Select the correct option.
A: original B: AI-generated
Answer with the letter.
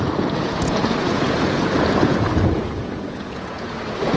B